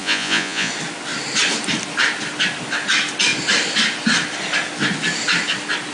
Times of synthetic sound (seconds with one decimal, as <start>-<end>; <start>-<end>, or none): 0.0-0.7